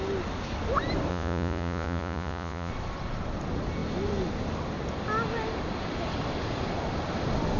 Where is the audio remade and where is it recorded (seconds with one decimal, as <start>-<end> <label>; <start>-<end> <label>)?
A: 0.0-1.1 recorded; 1.1-2.7 remade; 2.7-7.6 recorded